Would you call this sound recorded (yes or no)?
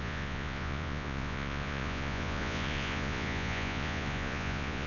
no